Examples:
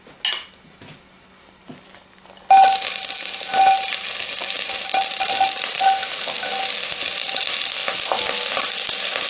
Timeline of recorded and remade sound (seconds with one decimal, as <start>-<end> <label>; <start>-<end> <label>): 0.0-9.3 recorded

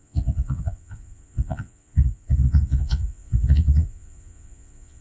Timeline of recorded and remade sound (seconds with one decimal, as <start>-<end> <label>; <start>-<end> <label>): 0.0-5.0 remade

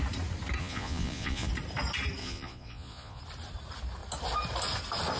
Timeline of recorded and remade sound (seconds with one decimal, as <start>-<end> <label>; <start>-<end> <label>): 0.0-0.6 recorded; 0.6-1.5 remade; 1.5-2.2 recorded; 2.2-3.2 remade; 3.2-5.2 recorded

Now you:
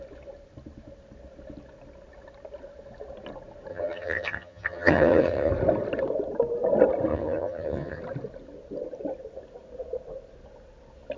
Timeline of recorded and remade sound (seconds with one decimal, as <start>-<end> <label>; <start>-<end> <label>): 0.0-3.7 recorded; 3.7-5.5 remade; 5.5-7.1 recorded; 7.1-8.0 remade; 8.0-11.2 recorded

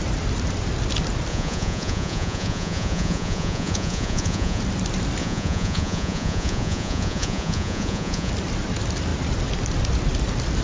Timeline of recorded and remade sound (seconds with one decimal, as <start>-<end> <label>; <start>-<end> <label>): 0.0-1.3 recorded; 1.3-4.6 remade; 4.6-5.2 recorded; 5.2-8.3 remade; 8.3-10.6 recorded